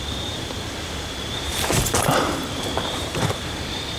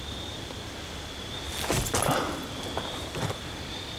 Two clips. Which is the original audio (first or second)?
second